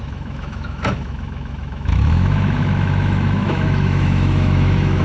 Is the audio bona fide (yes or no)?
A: no